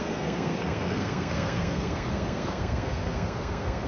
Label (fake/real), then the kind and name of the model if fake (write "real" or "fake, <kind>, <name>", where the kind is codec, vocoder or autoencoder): fake, codec, SNAC